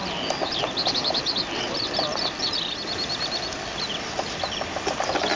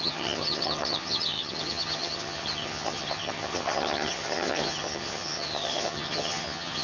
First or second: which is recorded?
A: first